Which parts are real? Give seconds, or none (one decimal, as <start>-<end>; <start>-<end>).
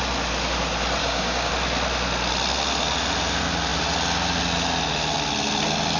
0.0-1.0; 1.5-6.0